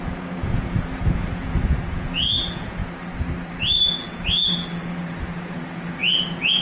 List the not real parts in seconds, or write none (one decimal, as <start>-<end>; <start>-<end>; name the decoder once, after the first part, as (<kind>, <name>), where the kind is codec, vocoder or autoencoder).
0.0-2.8 (vocoder, Vocos); 4.0-6.6